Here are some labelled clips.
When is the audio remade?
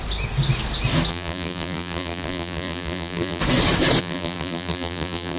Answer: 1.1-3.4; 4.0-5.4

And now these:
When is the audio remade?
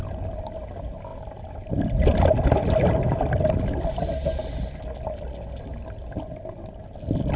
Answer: none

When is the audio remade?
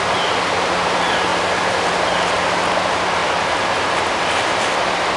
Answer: 3.2-4.2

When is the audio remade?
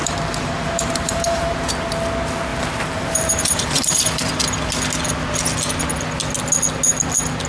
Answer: 0.0-1.7; 2.5-4.3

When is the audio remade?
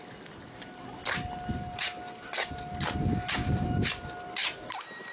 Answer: 3.4-4.0; 4.4-5.1